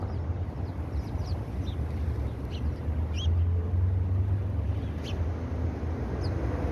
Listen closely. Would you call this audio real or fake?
real